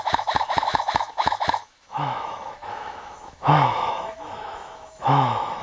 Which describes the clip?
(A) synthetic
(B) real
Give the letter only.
A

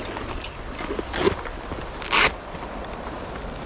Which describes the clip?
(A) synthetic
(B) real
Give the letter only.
B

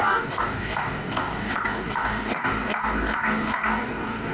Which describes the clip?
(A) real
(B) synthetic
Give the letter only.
B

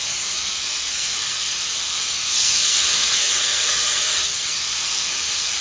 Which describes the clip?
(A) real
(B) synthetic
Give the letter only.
B